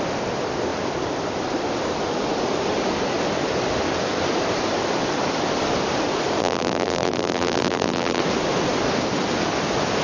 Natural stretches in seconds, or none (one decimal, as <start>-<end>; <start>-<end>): 0.0-6.4; 8.2-10.0